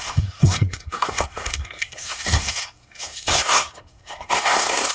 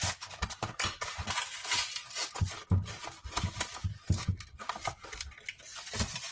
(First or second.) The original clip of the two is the second